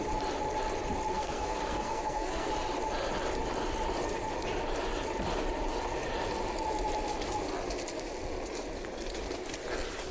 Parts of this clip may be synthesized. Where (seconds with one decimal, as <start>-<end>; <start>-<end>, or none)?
1.1-2.5